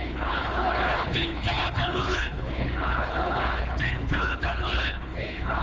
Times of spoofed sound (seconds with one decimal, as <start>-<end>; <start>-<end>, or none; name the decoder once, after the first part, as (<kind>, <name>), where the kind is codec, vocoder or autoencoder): 0.0-5.6 (codec, HILCodec)